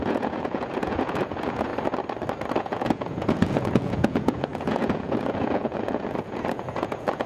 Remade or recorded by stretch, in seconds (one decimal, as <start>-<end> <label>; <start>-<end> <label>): 0.0-1.7 remade; 1.7-2.6 recorded; 2.6-7.3 remade